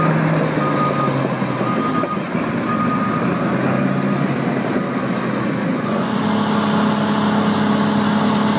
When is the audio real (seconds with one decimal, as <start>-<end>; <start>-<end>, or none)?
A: 0.0-5.7; 6.2-8.6